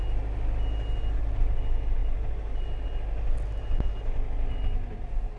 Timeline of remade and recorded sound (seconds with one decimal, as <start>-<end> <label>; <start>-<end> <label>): 0.0-5.4 recorded